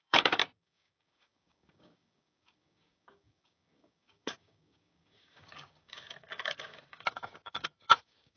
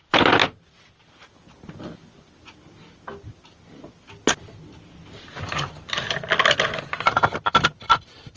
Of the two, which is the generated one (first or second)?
first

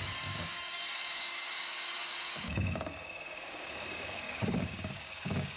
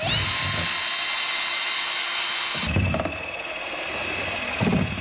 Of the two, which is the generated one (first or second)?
first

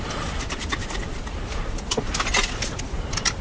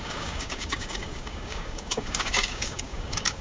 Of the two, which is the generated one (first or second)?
second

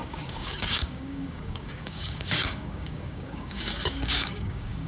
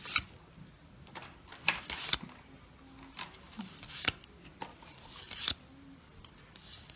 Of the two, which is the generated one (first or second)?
first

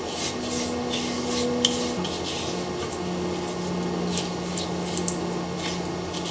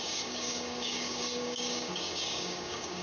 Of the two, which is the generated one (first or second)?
second